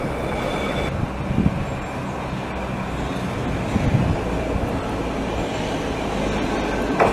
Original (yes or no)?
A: yes